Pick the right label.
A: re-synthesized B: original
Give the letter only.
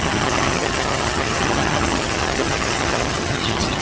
A